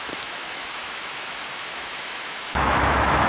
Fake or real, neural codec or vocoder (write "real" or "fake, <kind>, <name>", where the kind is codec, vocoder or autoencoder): fake, autoencoder, DAC-VAE